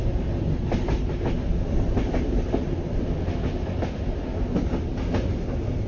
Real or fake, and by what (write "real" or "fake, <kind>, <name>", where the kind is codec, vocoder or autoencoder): real